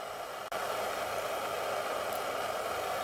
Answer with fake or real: real